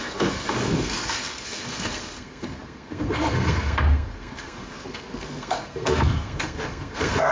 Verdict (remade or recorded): remade